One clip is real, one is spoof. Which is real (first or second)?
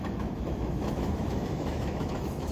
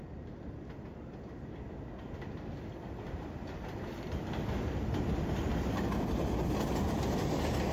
second